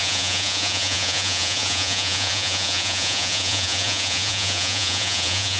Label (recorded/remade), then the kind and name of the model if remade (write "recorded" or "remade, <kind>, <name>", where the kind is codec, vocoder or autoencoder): remade, vocoder, Vocos